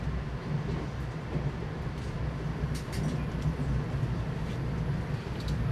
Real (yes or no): yes